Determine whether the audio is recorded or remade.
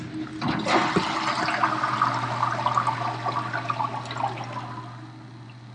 recorded